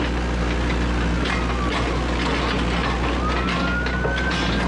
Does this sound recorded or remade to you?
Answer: recorded